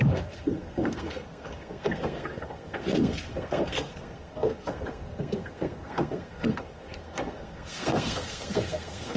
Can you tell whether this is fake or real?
fake